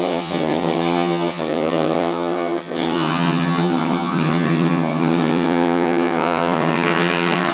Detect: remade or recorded remade